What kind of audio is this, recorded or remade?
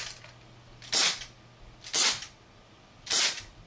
recorded